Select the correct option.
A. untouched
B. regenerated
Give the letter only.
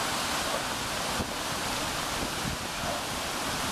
A